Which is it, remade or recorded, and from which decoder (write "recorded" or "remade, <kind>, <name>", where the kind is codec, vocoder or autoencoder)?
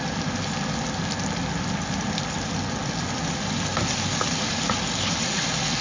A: recorded